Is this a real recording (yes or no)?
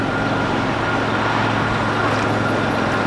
yes